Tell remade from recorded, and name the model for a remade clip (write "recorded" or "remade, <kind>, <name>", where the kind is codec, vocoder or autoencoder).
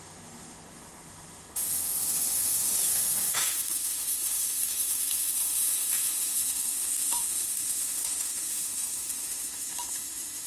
remade, autoencoder, DAC-VAE